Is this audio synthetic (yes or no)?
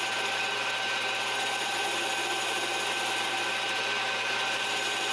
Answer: no